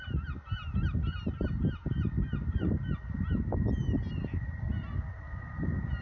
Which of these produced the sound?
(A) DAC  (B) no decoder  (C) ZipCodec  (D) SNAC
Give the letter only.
B